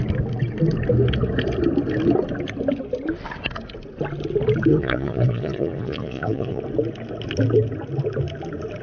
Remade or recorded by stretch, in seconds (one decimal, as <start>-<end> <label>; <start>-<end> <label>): 0.0-4.7 recorded; 4.7-6.6 remade; 6.6-8.8 recorded